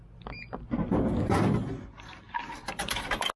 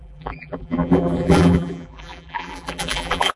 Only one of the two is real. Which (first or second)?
first